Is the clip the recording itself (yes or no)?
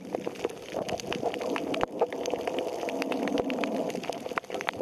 yes